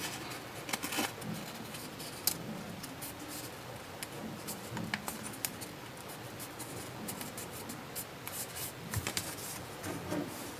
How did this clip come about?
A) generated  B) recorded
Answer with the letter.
B